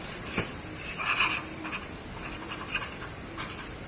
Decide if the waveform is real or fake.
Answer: real